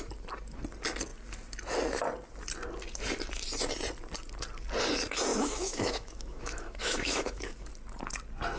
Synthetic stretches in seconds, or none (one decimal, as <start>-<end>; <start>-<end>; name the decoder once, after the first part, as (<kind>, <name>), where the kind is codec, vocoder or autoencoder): 5.3-7.7 (autoencoder, DAC-VAE)